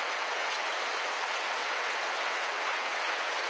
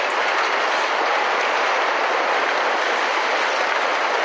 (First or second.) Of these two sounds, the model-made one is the first